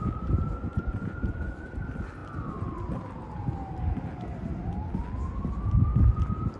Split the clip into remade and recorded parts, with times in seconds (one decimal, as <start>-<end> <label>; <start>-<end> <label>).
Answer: 0.0-0.7 recorded; 0.7-1.7 remade; 1.7-6.6 recorded